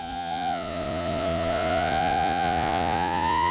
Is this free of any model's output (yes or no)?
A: no